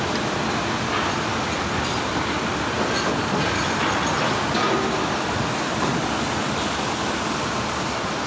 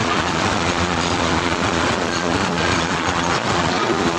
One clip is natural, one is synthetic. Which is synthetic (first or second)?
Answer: second